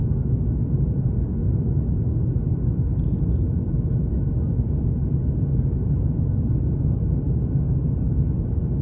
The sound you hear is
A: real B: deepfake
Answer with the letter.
A